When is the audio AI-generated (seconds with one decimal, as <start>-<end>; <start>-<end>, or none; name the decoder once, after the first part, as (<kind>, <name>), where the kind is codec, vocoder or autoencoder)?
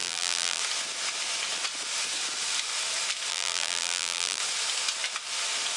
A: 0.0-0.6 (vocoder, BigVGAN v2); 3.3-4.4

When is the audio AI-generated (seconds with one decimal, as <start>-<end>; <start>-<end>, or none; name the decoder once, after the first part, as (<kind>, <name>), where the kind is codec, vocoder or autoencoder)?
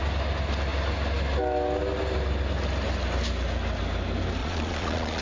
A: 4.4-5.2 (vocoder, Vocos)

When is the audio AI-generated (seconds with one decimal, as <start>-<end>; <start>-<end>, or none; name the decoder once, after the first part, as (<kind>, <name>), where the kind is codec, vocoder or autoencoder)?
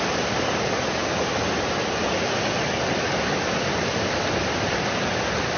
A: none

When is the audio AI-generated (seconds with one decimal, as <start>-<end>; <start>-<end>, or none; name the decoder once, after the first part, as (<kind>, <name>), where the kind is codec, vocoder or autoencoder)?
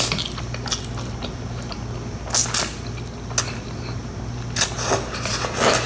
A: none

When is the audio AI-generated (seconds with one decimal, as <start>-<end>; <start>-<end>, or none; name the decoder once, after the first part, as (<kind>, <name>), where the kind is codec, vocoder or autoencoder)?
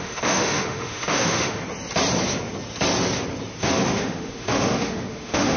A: 0.0-1.6 (autoencoder, DAC-VAE); 3.6-5.6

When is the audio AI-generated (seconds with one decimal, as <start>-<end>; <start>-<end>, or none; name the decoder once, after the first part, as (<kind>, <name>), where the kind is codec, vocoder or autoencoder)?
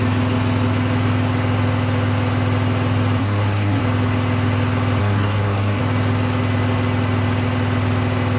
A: 3.2-3.8 (codec, SNAC); 5.0-5.8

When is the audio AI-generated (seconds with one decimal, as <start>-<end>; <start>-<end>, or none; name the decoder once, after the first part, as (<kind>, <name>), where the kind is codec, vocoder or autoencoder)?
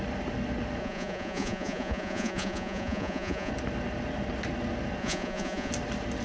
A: 0.8-3.5 (vocoder, Vocos); 5.0-5.7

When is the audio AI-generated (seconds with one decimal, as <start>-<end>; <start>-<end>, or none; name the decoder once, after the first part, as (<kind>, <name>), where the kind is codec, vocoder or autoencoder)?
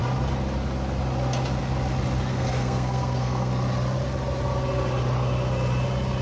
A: 2.3-3.5 (codec, SNAC)